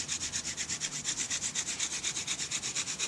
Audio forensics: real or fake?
real